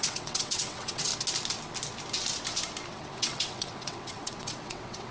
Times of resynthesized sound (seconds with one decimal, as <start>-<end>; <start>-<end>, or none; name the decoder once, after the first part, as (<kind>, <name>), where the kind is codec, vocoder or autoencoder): 0.0-1.1 (vocoder, WaveNeXt); 2.9-5.1